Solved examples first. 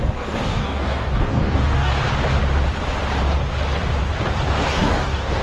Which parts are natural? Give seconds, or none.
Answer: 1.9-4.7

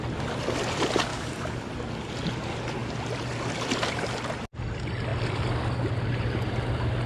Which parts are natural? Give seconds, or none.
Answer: 0.0-1.1; 1.7-7.1